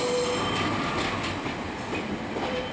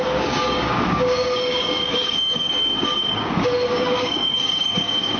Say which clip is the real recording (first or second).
first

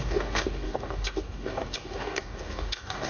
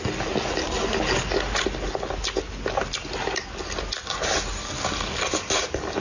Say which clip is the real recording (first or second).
second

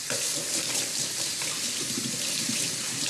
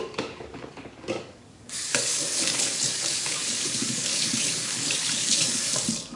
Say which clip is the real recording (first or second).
first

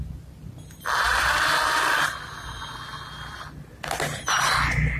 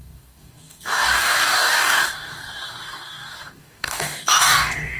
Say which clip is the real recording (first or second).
first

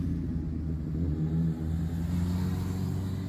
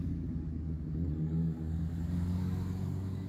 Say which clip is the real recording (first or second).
first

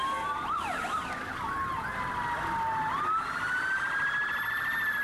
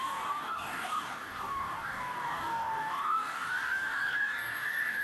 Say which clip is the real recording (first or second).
first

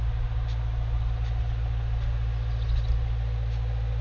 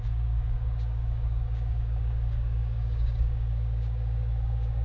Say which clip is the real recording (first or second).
first